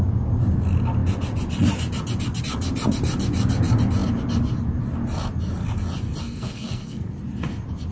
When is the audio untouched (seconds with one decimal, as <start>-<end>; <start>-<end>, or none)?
0.0-6.2; 7.1-7.9